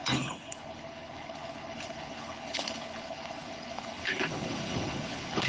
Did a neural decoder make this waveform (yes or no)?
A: yes